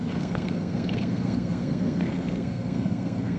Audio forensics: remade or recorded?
remade